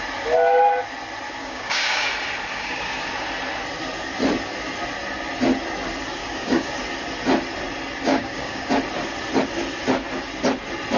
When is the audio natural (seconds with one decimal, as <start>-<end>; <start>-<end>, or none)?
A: 0.0-1.4; 2.1-2.5; 3.1-6.2; 6.7-8.1; 8.7-11.0